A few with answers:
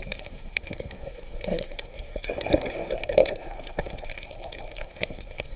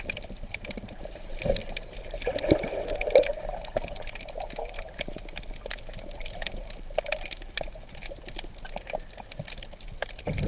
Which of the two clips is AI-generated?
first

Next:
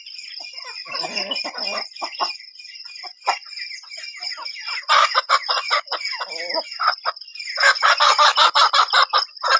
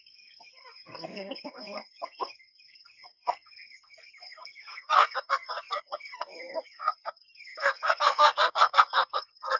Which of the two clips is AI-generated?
second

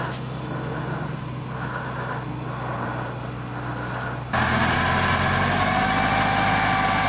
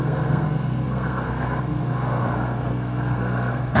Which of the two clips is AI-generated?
second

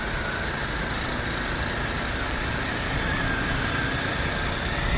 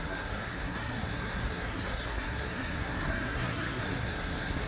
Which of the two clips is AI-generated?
second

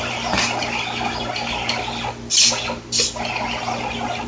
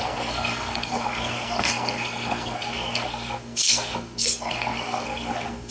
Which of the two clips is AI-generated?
second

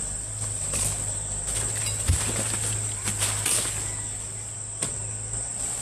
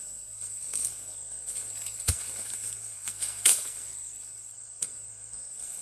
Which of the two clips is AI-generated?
second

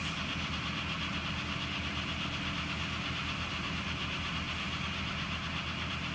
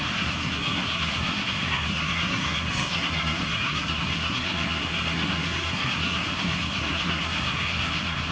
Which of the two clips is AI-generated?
second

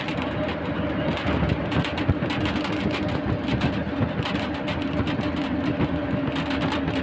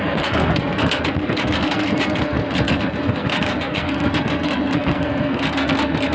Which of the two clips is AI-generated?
second